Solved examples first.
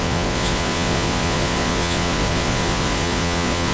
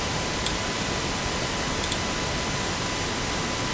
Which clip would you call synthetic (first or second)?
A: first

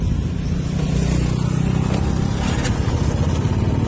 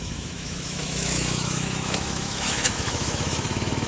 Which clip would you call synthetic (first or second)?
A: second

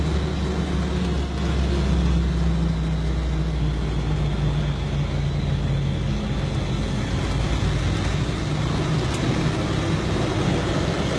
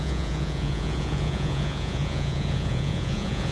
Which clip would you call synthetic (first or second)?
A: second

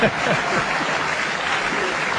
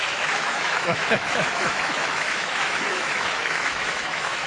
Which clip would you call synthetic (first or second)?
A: second